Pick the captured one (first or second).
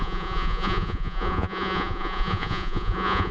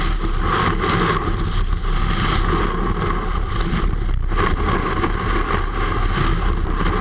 second